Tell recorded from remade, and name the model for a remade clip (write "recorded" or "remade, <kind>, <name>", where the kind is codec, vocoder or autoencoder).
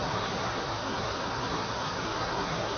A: remade, codec, SNAC